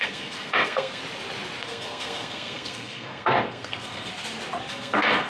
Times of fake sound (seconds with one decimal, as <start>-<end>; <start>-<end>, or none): 0.0-1.0; 1.6-4.1; 4.7-5.3